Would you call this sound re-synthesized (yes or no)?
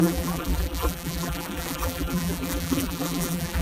yes